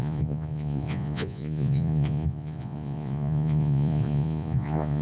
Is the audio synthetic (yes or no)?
yes